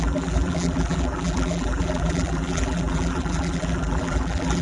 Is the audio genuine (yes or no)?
no